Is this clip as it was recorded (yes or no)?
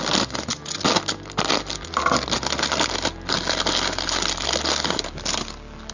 yes